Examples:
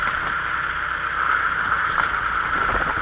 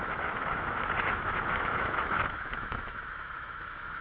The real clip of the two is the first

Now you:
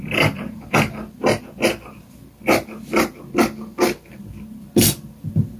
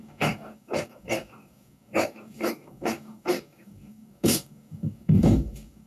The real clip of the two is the first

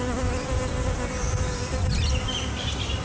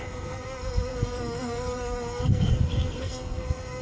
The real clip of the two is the first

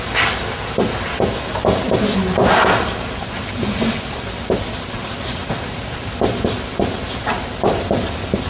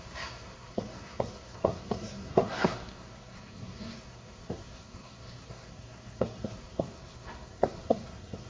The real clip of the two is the first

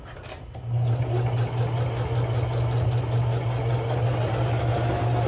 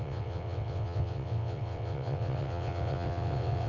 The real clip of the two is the first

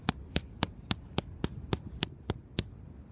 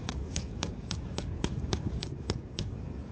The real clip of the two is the first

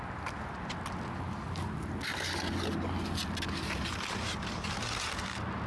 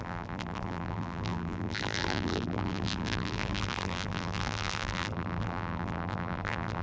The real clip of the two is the first